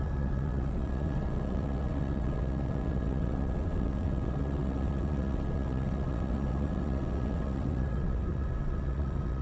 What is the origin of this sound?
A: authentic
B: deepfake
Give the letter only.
B